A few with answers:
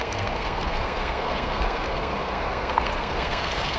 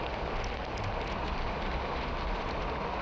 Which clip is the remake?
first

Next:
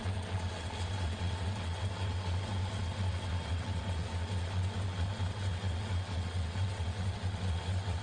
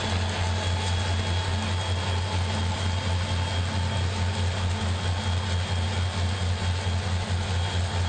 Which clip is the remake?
first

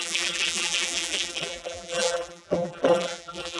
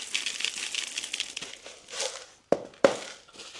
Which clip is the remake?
first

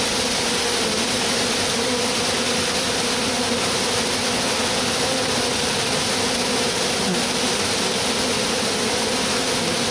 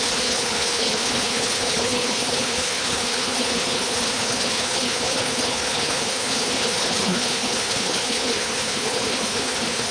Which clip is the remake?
second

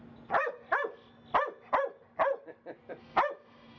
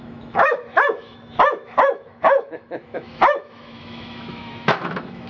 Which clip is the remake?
second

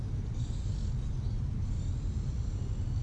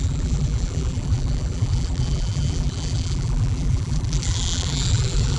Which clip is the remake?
second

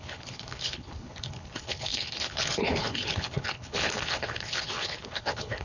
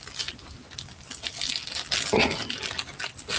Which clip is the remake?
first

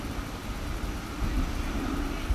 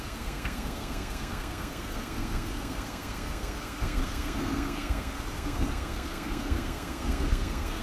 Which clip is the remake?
second